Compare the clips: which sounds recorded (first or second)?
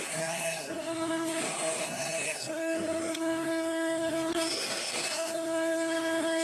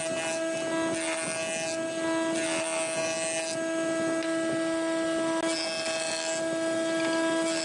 second